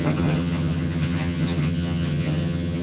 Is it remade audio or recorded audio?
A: remade